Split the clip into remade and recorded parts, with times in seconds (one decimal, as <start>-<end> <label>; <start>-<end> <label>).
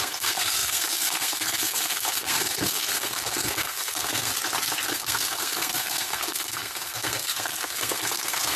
0.0-4.3 remade; 4.3-4.9 recorded; 4.9-8.6 remade